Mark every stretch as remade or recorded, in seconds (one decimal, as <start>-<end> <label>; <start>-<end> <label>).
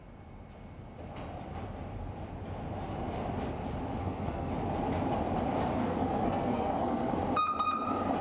0.0-4.0 recorded; 4.0-4.5 remade; 4.5-5.8 recorded; 5.8-7.1 remade; 7.1-8.2 recorded